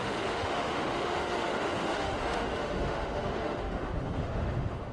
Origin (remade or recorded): remade